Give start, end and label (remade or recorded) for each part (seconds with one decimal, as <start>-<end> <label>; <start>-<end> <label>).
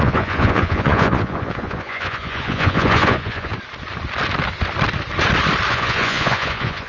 0.0-3.5 remade; 3.5-5.7 recorded; 5.7-6.9 remade